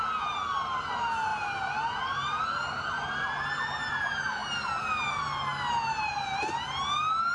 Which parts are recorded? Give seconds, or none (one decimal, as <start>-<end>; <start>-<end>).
0.0-7.3